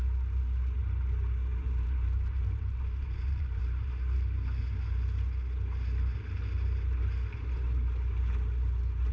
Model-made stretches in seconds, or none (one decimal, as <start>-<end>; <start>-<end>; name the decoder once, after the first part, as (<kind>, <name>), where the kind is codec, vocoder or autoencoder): 1.5-3.9 (vocoder, BigVGAN v2)